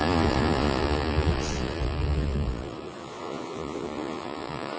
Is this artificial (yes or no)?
yes